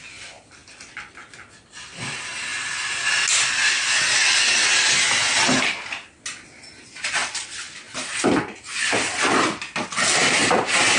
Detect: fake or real real